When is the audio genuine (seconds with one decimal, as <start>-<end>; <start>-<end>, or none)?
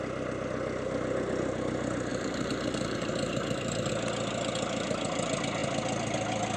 0.0-2.1; 3.9-6.6